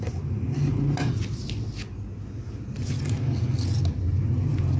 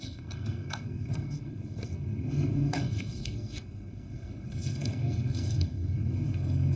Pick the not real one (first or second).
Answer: second